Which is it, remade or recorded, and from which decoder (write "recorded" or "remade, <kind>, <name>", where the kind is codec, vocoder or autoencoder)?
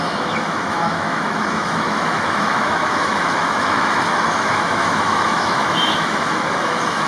remade, autoencoder, DAC-VAE